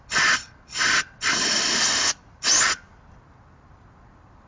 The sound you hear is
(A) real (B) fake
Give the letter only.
A